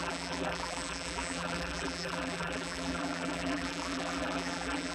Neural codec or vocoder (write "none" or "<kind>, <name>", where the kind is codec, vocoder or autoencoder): vocoder, BigVGAN v2